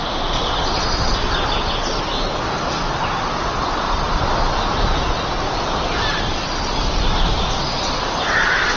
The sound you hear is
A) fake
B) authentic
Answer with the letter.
B